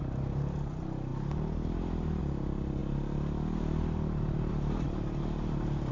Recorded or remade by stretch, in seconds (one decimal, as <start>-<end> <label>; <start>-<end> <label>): 0.0-5.9 recorded